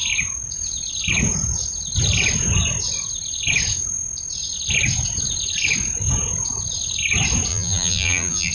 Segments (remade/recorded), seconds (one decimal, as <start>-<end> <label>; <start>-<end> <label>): 0.0-7.5 recorded; 7.5-8.5 remade

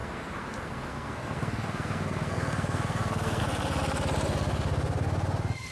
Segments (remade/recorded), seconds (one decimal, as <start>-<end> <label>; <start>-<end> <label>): 0.0-3.4 remade; 3.4-5.7 recorded

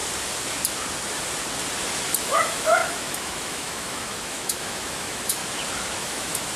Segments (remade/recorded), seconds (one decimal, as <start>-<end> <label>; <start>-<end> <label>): 0.0-2.2 recorded; 2.2-5.4 remade; 5.4-6.0 recorded; 6.0-6.6 remade

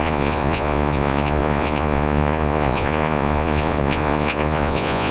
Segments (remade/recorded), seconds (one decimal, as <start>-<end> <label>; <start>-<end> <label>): 0.0-5.1 remade

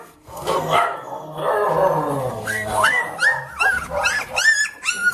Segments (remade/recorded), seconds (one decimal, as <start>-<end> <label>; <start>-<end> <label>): 0.0-1.4 remade; 1.4-2.3 recorded; 2.3-3.0 remade; 3.0-5.1 recorded

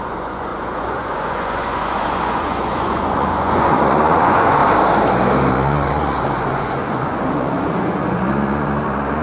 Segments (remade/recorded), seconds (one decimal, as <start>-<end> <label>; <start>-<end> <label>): 0.0-4.6 remade; 4.6-5.5 recorded; 5.5-9.2 remade